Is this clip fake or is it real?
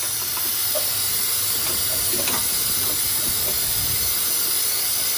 real